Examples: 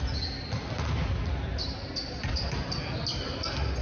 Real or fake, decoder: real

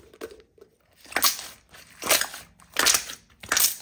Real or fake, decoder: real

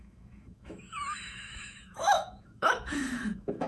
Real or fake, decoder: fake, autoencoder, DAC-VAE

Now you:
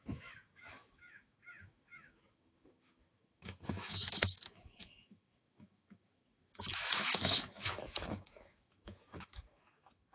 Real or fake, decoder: fake, autoencoder, DAC-VAE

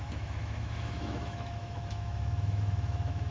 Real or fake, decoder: fake, autoencoder, DAC-VAE